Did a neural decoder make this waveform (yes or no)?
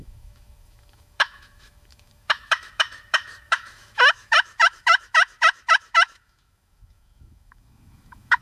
yes